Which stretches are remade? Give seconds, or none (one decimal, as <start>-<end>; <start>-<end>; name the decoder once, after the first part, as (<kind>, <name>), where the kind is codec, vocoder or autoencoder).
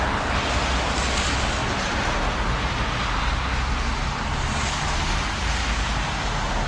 none